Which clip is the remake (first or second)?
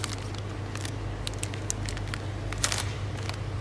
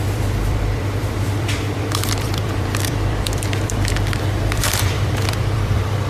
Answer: second